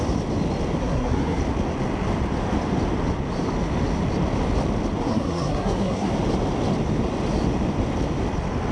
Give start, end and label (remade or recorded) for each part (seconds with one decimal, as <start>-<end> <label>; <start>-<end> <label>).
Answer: 0.0-0.8 recorded; 0.8-1.4 remade; 1.4-5.0 recorded; 5.0-6.1 remade; 6.1-8.7 recorded

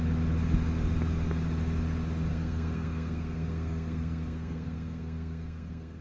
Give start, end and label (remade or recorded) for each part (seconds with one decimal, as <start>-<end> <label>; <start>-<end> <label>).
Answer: 0.0-2.3 recorded; 2.3-6.0 remade